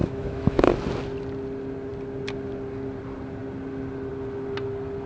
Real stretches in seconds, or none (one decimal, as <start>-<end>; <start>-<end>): 0.7-5.1